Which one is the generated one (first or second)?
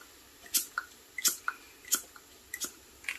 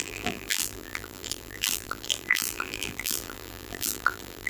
second